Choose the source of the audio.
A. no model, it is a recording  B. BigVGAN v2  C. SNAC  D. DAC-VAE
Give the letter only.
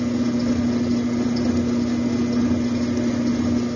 A